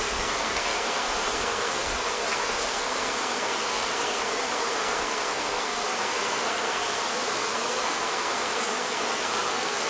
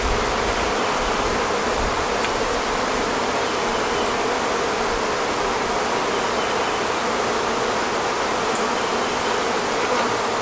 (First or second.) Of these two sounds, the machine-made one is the first